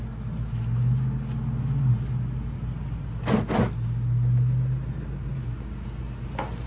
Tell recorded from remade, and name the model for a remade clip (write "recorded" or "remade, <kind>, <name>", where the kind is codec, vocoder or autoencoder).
recorded